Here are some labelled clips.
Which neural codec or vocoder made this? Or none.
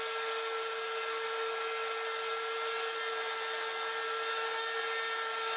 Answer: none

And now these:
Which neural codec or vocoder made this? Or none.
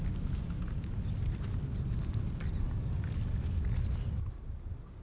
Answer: none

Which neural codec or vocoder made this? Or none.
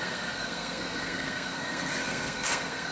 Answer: codec, SNAC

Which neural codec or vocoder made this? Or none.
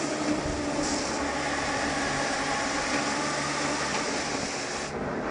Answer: none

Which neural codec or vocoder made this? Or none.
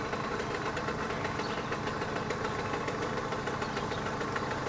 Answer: none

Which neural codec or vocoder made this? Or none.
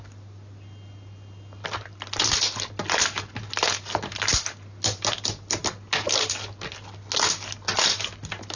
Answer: none